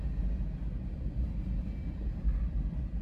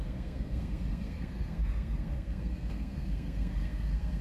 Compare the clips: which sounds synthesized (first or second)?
second